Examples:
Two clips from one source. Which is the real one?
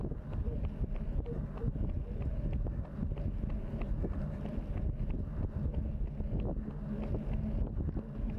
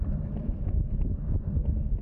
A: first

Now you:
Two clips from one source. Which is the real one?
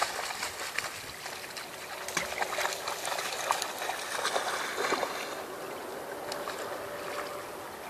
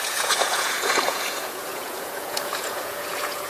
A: first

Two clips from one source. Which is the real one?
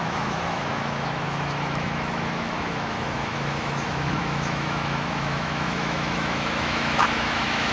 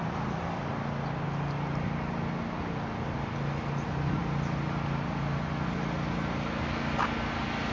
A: second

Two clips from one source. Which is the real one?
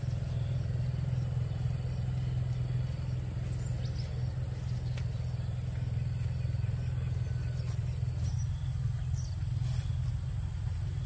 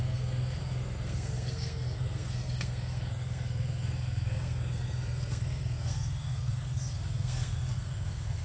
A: first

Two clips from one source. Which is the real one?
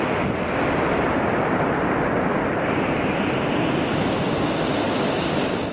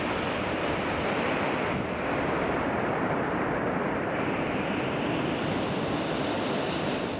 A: first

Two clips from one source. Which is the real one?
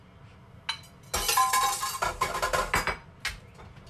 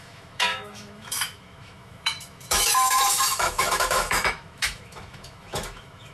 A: first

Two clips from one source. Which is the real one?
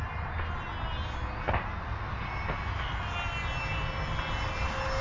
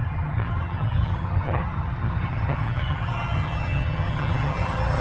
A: first